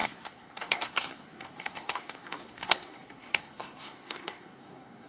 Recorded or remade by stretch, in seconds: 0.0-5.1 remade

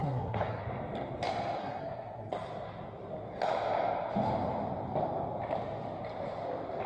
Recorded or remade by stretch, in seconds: 0.0-0.6 remade; 0.6-1.6 recorded; 1.6-2.3 remade; 2.3-6.9 recorded

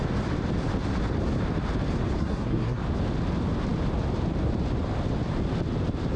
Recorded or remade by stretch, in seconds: 0.0-2.2 recorded; 2.2-2.8 remade; 2.8-6.2 recorded

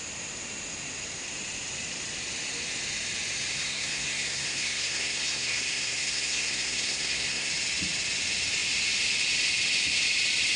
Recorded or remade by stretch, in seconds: 0.0-3.5 recorded; 3.5-7.5 remade; 7.5-10.6 recorded

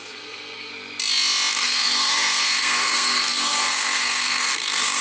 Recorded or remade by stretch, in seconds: 0.0-0.7 remade; 0.7-1.5 recorded; 1.5-5.0 remade

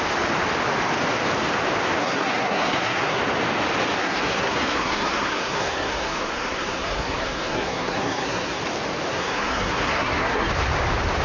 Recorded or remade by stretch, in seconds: 0.0-2.0 recorded; 2.0-3.2 remade; 3.2-4.0 recorded; 4.0-8.6 remade; 8.6-9.1 recorded; 9.1-10.5 remade; 10.5-11.2 recorded

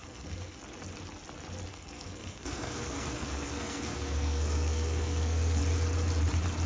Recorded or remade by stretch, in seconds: 0.0-0.6 remade; 0.6-1.7 recorded; 1.7-5.6 remade; 5.6-6.7 recorded

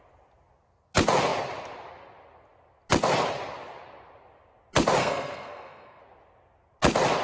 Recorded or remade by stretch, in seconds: 0.0-5.0 recorded; 5.0-6.0 remade; 6.0-7.2 recorded